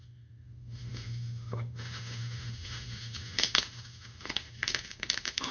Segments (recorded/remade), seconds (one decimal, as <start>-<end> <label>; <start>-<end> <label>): 0.0-5.5 remade